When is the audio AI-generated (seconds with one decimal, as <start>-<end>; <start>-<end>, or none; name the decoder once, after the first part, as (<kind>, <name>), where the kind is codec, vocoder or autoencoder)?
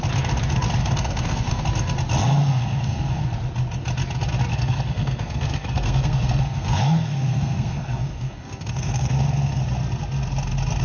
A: 0.8-1.6 (codec, SNAC); 2.4-3.2; 4.5-9.6